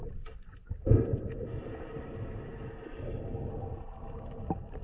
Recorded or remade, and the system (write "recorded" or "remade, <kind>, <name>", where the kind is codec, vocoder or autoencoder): recorded